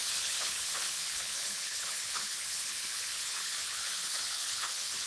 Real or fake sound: fake